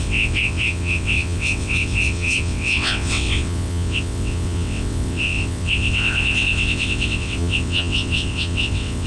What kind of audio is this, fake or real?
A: fake